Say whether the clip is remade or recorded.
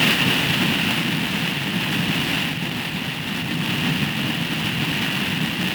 recorded